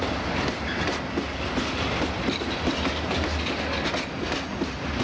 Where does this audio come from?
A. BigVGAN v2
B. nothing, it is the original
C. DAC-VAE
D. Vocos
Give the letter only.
B